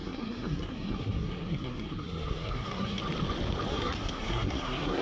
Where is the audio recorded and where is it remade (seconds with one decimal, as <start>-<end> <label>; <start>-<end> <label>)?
0.0-3.0 remade; 3.0-3.7 recorded; 3.7-5.0 remade